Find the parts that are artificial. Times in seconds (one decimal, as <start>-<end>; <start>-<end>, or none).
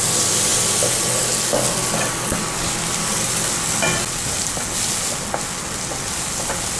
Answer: none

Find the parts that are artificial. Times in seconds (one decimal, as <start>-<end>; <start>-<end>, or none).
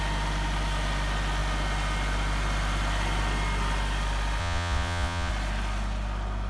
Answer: 4.4-5.3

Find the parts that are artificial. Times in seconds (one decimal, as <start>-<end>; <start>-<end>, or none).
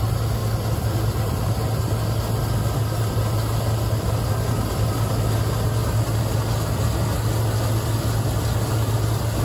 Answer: none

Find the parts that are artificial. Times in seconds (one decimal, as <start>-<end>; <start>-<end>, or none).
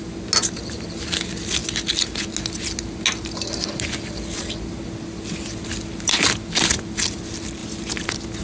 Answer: none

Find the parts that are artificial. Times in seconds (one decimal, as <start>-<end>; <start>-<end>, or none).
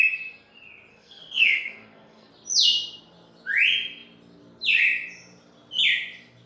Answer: 0.9-2.3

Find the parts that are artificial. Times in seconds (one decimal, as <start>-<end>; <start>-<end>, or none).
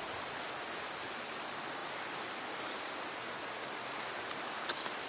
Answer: none